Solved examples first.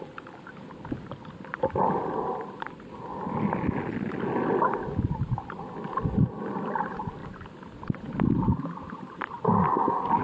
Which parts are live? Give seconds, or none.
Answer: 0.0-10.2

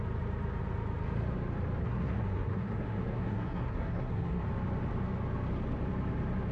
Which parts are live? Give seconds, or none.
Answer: 0.0-1.8; 4.4-6.5

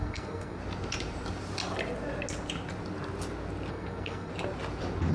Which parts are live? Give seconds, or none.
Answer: 0.6-3.7; 4.3-5.1

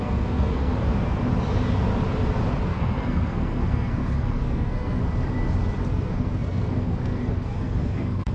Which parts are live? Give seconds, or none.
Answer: 0.7-2.7; 5.0-5.9

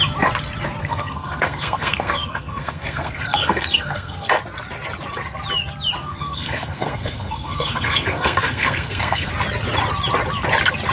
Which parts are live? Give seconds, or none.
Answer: 0.0-0.8; 4.4-6.0; 9.3-10.9